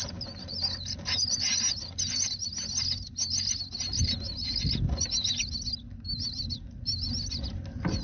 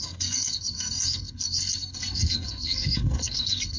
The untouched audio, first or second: first